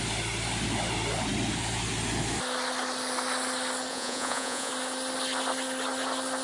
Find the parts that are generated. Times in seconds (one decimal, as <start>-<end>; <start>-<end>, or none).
3.9-4.7